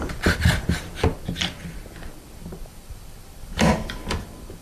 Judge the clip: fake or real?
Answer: fake